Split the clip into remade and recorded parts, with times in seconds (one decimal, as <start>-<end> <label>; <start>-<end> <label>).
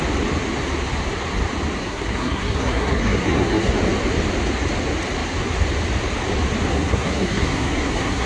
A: 0.0-1.8 recorded; 1.8-3.7 remade; 3.7-6.7 recorded; 6.7-8.3 remade